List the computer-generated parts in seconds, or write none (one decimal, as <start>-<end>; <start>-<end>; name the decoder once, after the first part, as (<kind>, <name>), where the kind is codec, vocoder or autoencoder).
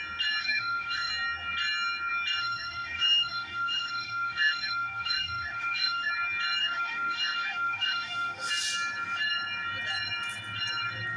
0.4-1.1 (autoencoder, DAC-VAE); 2.4-6.1; 6.6-8.5